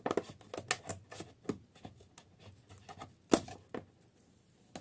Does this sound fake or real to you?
real